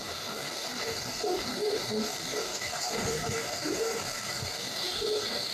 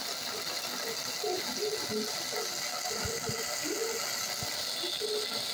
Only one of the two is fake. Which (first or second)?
first